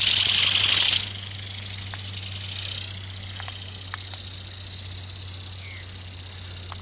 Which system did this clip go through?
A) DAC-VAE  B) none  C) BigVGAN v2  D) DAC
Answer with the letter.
B